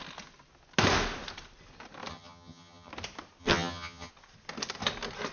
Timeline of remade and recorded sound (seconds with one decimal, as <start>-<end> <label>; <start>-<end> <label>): 0.0-2.1 recorded; 2.1-2.9 remade; 2.9-3.4 recorded; 3.4-4.1 remade; 4.1-5.3 recorded